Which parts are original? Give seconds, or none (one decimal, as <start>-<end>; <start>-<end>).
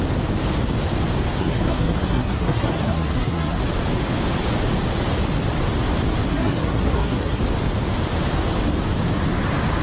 0.0-1.4; 3.6-6.3; 7.4-9.8